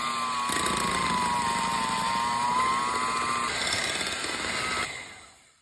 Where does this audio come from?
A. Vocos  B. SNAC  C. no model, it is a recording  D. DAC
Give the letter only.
C